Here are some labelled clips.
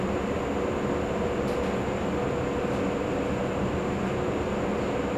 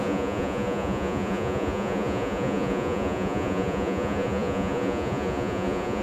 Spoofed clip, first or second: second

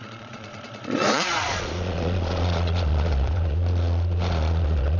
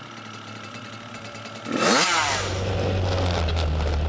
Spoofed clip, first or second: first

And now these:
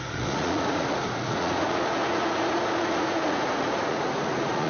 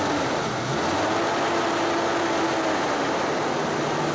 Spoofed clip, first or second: first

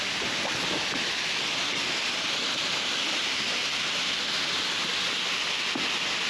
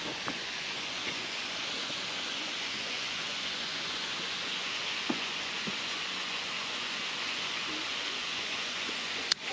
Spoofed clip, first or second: second